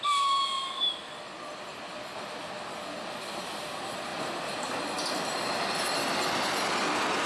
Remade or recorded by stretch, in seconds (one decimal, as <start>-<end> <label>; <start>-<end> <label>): 0.0-7.3 recorded